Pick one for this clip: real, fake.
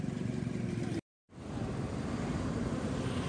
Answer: real